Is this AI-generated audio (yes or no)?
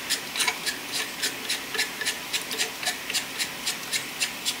no